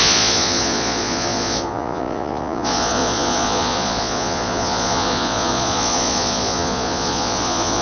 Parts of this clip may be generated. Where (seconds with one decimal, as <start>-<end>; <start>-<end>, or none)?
0.0-7.8